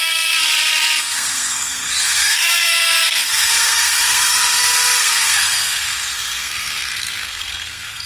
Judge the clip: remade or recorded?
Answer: remade